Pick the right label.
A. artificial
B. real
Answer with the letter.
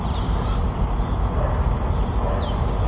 B